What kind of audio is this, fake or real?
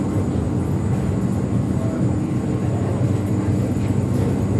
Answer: real